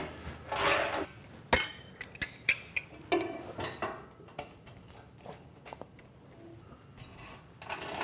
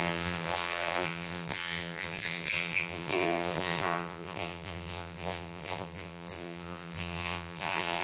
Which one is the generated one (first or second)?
second